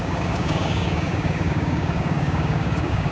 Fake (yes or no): yes